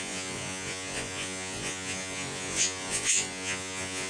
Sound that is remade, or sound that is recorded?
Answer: remade